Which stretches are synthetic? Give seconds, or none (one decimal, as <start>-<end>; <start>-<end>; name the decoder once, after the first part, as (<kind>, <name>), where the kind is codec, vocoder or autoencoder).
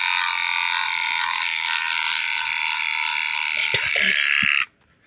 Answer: 0.8-3.9 (vocoder, BigVGAN v2)